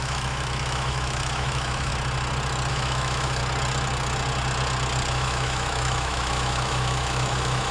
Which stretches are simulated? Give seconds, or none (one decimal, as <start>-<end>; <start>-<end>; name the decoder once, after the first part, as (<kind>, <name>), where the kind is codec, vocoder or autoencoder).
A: 0.0-1.9 (autoencoder, DAC-VAE); 2.7-3.4; 5.1-7.7